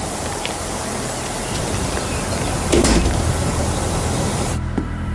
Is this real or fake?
fake